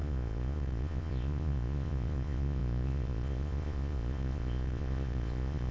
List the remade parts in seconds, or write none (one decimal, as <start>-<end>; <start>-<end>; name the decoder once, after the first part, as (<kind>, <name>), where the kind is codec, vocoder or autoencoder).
0.0-5.7 (vocoder, Vocos)

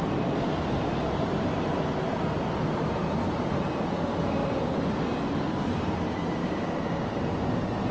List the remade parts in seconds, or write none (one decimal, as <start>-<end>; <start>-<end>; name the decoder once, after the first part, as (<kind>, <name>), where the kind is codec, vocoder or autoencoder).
6.4-7.2 (codec, DAC)

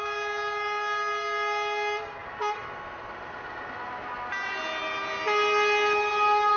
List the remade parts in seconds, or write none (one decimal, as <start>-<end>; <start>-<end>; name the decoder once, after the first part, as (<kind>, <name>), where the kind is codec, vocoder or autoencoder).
none

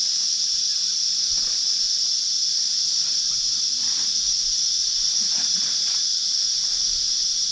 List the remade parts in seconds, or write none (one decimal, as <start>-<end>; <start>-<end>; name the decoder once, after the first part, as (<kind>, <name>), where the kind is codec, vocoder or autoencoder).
3.9-5.6 (vocoder, Vocos)

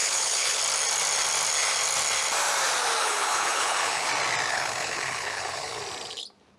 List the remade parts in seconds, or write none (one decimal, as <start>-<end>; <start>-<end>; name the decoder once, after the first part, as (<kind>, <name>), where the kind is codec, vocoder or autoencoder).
0.0-0.6 (codec, HILCodec); 3.0-4.1; 4.5-5.8

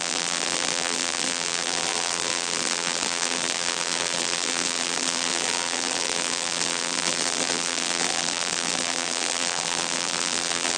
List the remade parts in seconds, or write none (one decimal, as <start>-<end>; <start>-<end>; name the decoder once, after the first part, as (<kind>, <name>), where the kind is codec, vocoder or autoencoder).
0.0-10.8 (vocoder, BigVGAN v2)

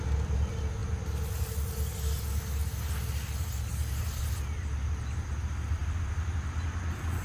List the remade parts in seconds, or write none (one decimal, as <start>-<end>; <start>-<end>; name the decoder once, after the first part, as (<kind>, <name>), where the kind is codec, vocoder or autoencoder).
none

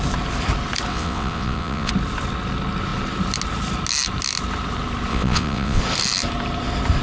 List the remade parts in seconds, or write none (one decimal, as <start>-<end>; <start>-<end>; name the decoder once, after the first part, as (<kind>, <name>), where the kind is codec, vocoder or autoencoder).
0.9-1.9 (vocoder, WaveNeXt); 5.1-5.8